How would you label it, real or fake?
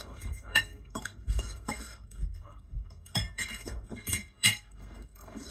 fake